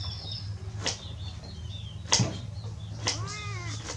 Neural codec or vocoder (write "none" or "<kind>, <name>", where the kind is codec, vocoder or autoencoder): none